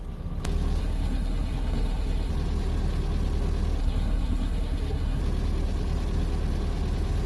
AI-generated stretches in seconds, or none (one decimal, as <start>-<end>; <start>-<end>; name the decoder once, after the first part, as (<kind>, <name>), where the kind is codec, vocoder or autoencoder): 0.8-2.3 (codec, SNAC); 3.8-5.2